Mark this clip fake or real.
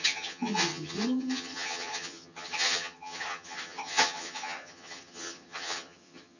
fake